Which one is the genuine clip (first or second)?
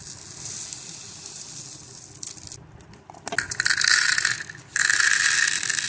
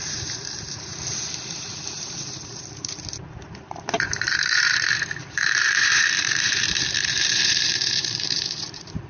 first